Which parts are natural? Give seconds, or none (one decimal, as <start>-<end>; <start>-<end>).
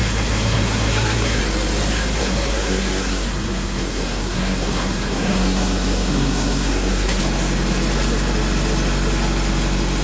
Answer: 1.4-2.2; 7.2-10.0